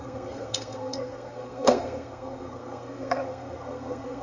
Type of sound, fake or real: fake